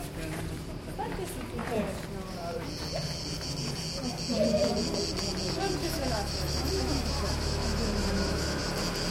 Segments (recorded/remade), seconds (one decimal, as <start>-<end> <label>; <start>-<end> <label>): 0.0-5.8 recorded; 5.8-8.6 remade; 8.6-9.1 recorded